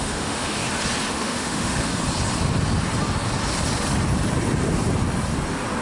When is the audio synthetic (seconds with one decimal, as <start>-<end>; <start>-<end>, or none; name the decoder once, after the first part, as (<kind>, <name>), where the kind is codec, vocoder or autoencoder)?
0.0-0.6 (autoencoder, DAC-VAE); 1.1-1.9